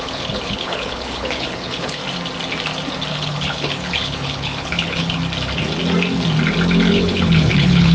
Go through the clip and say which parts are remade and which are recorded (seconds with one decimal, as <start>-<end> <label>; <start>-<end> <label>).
0.0-2.0 remade; 2.0-3.1 recorded; 3.1-5.2 remade; 5.2-6.9 recorded; 6.9-7.9 remade